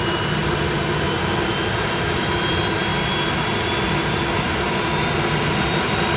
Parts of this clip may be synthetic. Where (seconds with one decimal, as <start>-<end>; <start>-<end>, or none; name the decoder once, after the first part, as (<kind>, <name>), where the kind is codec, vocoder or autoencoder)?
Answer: none